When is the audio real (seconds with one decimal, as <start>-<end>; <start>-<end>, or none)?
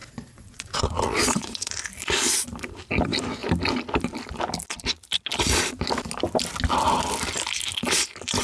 1.7-8.4